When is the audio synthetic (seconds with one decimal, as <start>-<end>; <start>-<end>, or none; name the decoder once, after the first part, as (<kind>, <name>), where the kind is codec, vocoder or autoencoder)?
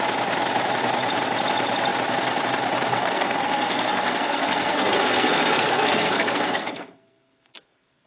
2.9-8.1 (codec, SNAC)